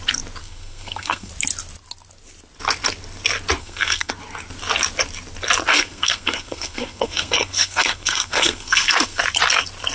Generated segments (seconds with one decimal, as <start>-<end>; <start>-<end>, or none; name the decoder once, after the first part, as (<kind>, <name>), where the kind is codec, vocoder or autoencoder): 0.4-1.3 (codec, SNAC); 3.6-4.1; 5.7-9.2